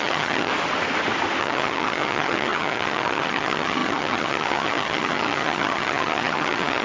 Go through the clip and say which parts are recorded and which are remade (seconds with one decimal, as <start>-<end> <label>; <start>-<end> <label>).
0.0-0.5 remade; 0.5-1.4 recorded; 1.4-6.8 remade